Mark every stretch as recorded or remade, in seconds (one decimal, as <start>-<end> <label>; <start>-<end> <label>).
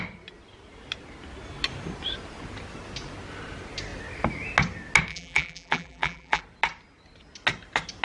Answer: 0.0-5.1 recorded; 5.1-6.4 remade; 6.4-8.0 recorded